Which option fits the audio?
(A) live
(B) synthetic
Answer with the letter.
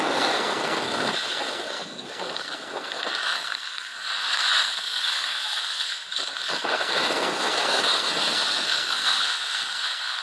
B